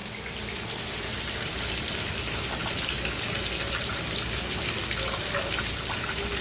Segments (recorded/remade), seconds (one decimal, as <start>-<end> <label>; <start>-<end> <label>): 0.0-6.4 recorded